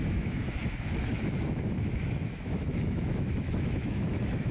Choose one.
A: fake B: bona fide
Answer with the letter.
A